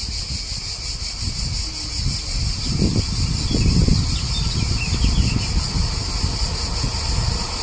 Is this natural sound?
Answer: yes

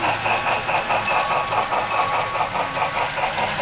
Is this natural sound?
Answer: yes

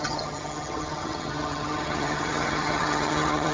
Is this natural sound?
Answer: no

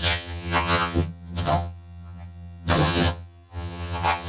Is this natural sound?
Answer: no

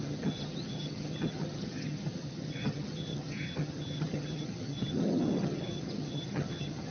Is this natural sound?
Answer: no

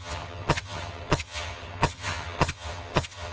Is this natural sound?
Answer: no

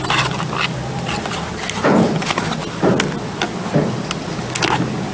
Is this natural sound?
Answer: yes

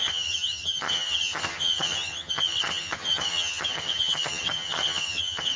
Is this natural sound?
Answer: no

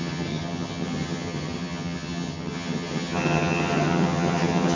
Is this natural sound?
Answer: no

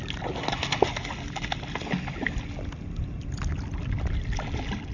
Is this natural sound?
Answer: yes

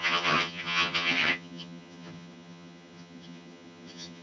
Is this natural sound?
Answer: no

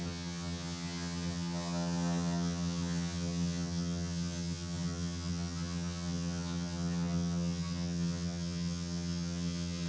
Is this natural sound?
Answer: no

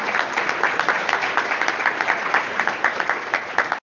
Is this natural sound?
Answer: yes